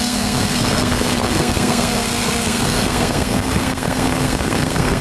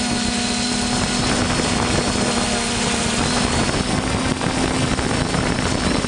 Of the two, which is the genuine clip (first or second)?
second